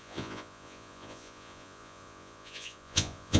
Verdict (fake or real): fake